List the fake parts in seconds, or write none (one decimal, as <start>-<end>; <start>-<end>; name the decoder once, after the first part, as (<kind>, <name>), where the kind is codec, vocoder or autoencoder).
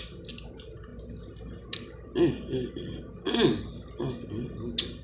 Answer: none